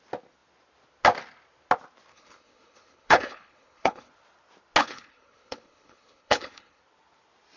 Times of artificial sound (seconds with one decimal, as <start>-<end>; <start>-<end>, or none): 2.1-4.1; 4.8-6.8